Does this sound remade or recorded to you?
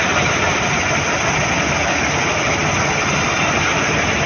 recorded